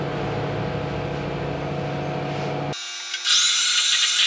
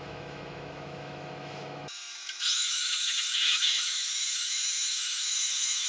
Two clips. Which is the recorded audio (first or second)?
first